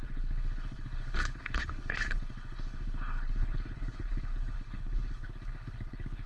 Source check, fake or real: fake